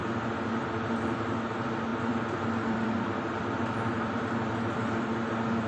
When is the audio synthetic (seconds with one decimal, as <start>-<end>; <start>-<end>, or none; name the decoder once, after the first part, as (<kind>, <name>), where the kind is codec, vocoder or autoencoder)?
1.9-5.3 (vocoder, BigVGAN v2)